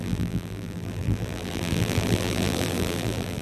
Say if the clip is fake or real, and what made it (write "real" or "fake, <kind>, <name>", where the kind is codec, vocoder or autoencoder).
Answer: fake, vocoder, BigVGAN v2